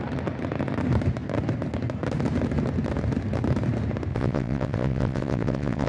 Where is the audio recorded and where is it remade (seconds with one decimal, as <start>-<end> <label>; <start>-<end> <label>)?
0.0-4.1 recorded; 4.1-5.9 remade